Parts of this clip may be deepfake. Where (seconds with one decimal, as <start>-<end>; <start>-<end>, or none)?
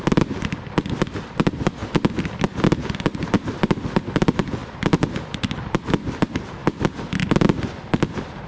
none